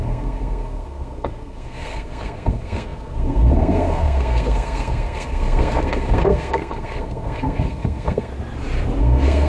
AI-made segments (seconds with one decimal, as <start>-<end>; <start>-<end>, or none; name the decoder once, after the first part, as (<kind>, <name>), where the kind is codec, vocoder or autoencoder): 0.0-8.3 (codec, SNAC); 9.0-9.5